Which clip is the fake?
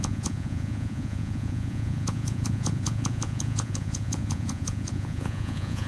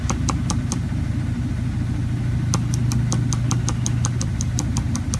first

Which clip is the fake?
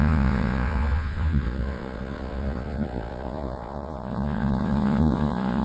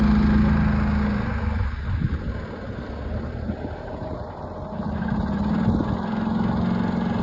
first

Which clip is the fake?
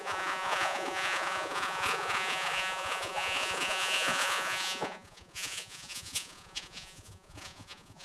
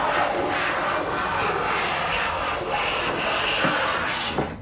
first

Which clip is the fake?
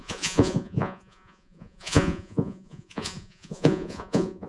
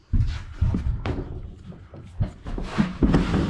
first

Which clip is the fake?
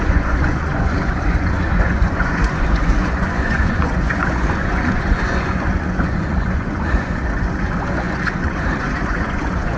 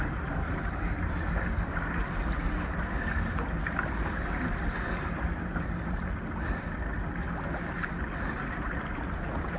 first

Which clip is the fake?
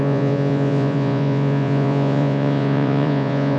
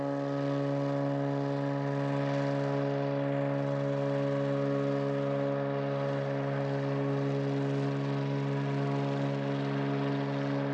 first